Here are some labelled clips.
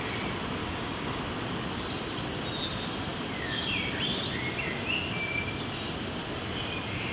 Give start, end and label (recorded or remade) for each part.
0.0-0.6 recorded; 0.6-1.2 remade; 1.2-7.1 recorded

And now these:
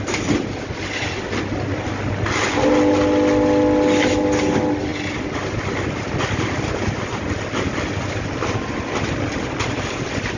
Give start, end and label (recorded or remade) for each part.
0.0-10.4 recorded

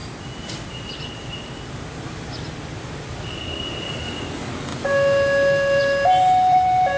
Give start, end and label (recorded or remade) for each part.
0.0-7.0 recorded

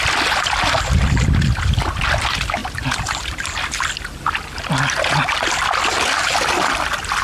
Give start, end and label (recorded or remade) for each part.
0.0-7.2 recorded

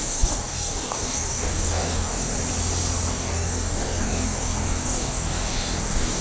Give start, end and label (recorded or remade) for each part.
0.0-2.3 remade; 2.3-3.1 recorded; 3.1-6.2 remade

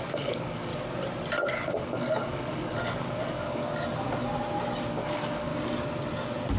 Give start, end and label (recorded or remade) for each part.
0.0-0.7 remade; 0.7-1.5 recorded; 1.5-3.6 remade; 3.6-4.9 recorded; 4.9-5.5 remade; 5.5-6.6 recorded